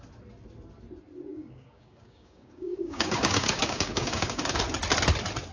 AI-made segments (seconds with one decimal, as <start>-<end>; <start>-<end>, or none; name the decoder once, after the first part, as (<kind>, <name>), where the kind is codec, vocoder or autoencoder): 1.3-4.6 (codec, DAC)

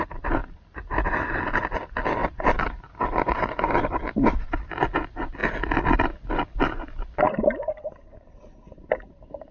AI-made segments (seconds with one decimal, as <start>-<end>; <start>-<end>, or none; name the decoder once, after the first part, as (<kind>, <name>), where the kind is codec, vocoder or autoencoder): none